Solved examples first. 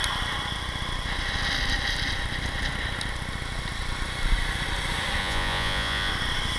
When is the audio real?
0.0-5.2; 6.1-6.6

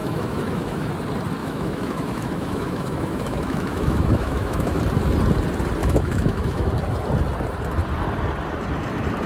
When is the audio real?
0.9-1.4; 4.8-5.8; 6.7-9.3

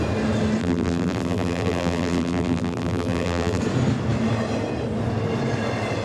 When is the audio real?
0.0-0.6; 3.6-6.0

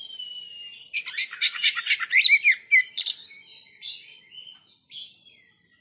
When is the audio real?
0.0-3.5; 4.2-5.8

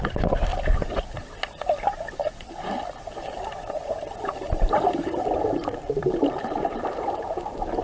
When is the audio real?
0.5-5.2

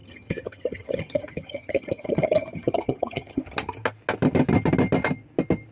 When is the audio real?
3.4-5.7